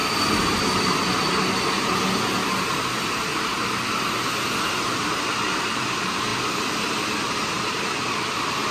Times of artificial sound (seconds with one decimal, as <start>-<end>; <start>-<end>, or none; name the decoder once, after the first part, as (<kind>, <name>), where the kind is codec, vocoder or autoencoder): none